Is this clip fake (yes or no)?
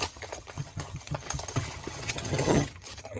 yes